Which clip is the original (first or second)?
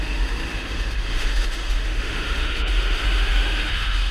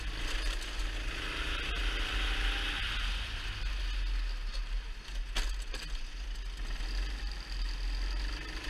second